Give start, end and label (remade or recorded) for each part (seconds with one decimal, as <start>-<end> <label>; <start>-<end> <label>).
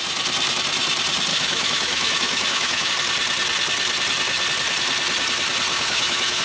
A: 0.0-1.3 recorded; 1.3-2.9 remade; 2.9-5.7 recorded; 5.7-6.4 remade